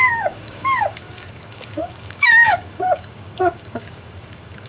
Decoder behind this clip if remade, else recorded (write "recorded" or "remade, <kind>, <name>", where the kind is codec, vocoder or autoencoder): remade, codec, DAC